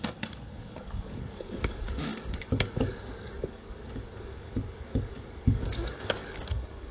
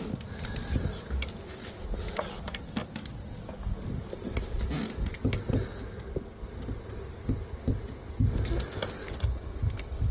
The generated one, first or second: first